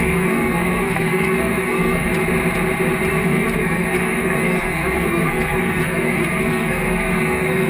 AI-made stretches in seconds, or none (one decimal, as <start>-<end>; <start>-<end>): 0.0-2.1; 3.1-7.7